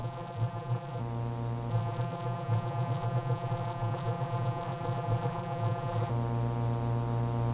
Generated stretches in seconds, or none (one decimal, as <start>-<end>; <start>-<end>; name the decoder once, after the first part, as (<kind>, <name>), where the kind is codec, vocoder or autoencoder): 0.0-1.0 (vocoder, BigVGAN v2); 1.7-6.1